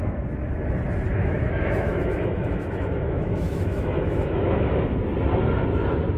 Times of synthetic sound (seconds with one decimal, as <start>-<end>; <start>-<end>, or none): 1.1-4.8